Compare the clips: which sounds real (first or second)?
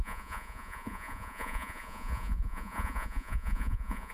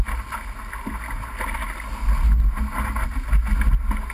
second